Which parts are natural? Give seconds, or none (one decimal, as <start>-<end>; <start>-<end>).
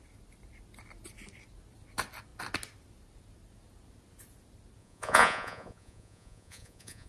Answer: 0.0-4.8